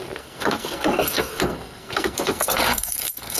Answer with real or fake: fake